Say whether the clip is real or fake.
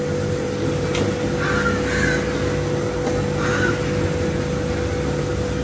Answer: real